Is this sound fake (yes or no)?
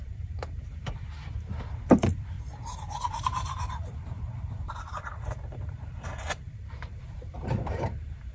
yes